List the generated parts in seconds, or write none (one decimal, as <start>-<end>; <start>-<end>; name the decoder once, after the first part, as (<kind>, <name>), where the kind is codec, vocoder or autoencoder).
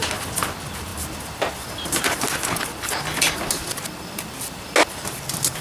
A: none